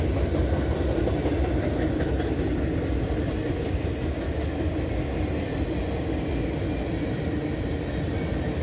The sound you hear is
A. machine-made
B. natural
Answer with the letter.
B